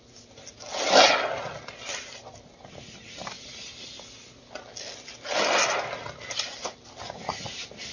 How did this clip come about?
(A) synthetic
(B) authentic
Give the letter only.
B